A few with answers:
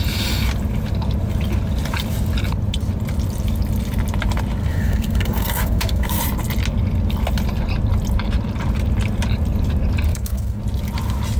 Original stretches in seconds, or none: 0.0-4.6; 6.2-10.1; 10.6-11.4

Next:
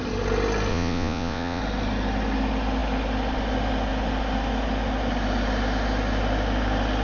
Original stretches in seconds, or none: 0.0-0.7; 1.6-7.0

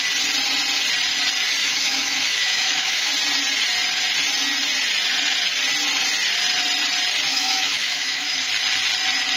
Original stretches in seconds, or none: 0.0-1.6; 3.1-7.3; 8.4-9.4

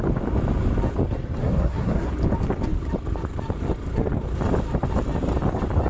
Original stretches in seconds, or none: 0.0-1.4; 2.1-5.9